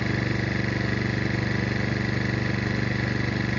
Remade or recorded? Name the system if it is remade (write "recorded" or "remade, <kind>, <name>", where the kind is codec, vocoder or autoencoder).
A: recorded